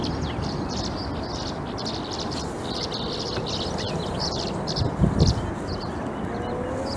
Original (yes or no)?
yes